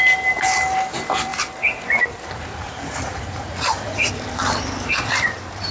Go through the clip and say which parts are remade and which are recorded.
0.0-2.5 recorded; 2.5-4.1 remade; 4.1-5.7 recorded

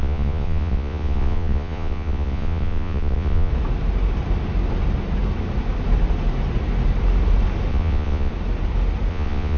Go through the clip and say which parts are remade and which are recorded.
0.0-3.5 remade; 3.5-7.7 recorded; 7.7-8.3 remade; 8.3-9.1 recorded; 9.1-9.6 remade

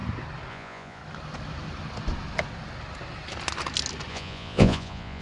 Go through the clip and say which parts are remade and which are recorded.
0.0-0.5 recorded; 0.5-1.0 remade; 1.0-4.1 recorded; 4.1-5.2 remade

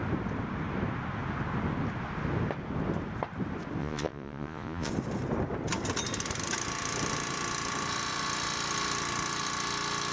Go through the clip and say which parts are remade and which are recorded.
0.0-3.8 recorded; 3.8-4.9 remade; 4.9-10.1 recorded

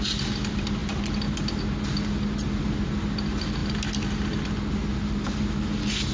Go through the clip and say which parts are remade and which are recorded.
0.0-6.1 recorded